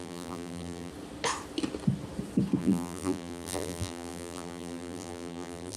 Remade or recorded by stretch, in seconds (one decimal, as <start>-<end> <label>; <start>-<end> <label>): 0.0-0.9 remade; 0.9-2.6 recorded; 2.6-5.8 remade